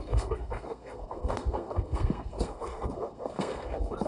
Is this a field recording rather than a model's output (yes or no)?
no